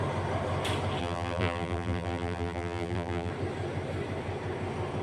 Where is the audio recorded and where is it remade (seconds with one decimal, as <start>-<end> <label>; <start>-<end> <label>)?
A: 0.0-1.0 recorded; 1.0-3.3 remade; 3.3-5.0 recorded